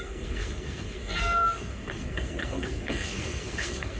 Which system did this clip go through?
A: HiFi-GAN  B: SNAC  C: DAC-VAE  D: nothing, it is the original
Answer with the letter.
B